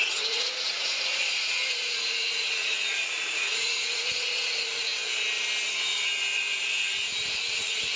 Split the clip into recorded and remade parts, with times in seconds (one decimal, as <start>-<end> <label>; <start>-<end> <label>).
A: 0.0-4.9 remade; 4.9-5.7 recorded; 5.7-8.0 remade